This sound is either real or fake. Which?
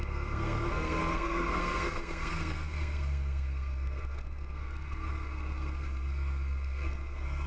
fake